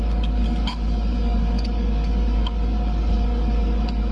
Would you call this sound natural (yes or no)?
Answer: no